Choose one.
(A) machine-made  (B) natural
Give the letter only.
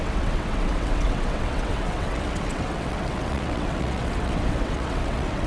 A